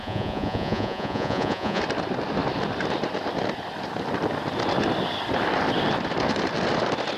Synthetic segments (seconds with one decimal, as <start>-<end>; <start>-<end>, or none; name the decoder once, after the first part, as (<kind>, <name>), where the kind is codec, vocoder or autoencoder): 0.0-1.8 (vocoder, Vocos)

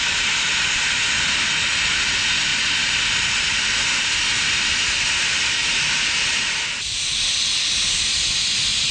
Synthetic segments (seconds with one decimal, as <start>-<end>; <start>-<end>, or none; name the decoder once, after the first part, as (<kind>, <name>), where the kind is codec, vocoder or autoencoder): none

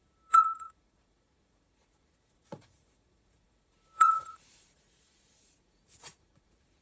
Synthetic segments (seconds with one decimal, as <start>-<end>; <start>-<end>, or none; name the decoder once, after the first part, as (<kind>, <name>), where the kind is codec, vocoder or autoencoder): 0.0-6.8 (vocoder, Vocos)

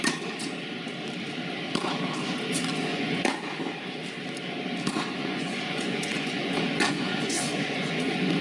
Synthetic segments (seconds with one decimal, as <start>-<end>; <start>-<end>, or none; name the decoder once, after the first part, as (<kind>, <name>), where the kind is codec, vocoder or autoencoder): 2.9-3.6 (vocoder, Vocos); 5.2-8.4

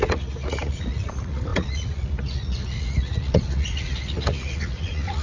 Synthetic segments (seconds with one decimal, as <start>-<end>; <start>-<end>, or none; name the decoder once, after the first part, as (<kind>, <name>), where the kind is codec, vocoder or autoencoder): 0.0-5.2 (vocoder, Vocos)

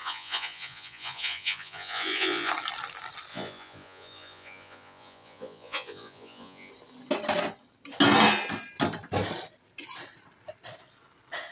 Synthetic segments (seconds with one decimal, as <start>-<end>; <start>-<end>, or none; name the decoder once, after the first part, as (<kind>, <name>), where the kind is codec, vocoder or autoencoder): 0.0-2.5 (vocoder, Vocos); 3.3-6.7

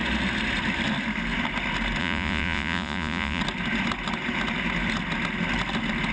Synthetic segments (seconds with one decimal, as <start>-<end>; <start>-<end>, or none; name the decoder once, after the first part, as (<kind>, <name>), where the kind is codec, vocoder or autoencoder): 2.0-3.4 (vocoder, Vocos)

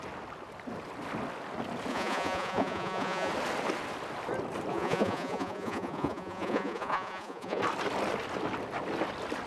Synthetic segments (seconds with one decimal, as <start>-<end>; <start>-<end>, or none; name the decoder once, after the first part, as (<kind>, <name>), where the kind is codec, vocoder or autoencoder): 1.9-3.3 (vocoder, Vocos); 4.7-7.6